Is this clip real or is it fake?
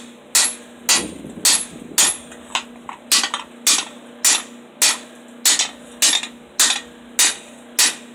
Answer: real